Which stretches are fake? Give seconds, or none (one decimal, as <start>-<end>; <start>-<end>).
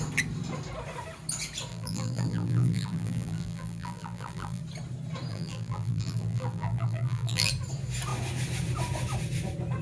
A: 1.7-4.6; 5.3-7.5